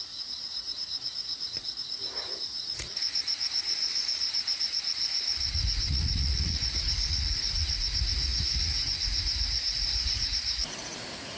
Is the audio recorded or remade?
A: remade